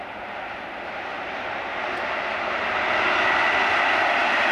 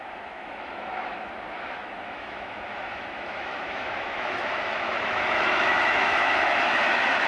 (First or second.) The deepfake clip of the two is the second